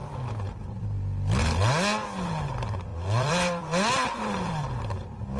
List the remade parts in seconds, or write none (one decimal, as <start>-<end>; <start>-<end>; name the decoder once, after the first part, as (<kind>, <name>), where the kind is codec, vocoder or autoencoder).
2.9-4.6 (vocoder, BigVGAN v2)